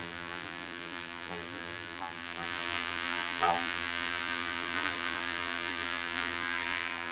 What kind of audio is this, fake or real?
fake